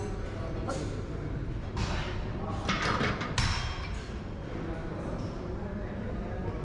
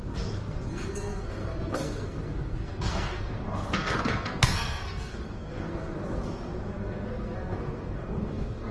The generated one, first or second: second